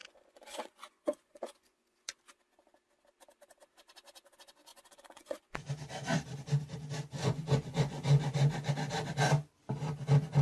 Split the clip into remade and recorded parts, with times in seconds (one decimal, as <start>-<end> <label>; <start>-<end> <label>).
0.0-2.2 remade; 2.2-4.7 recorded; 4.7-5.7 remade; 5.7-7.2 recorded; 7.2-8.7 remade; 8.7-10.4 recorded